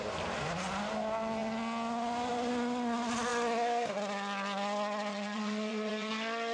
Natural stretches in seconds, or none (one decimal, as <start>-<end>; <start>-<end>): 0.0-5.1; 6.1-6.5